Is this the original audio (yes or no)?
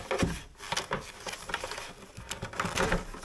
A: yes